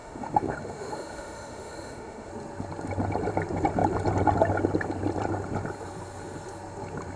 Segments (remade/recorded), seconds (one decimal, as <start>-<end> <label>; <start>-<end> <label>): 0.0-2.3 remade; 2.3-7.2 recorded